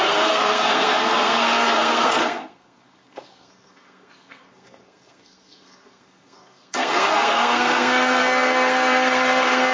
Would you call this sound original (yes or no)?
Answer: no